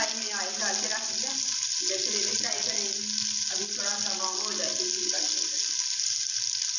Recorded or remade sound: recorded